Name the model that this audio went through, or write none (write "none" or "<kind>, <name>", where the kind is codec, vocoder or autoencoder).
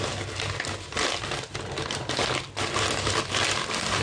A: none